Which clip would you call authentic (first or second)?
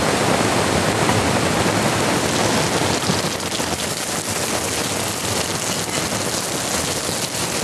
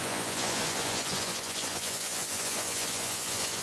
first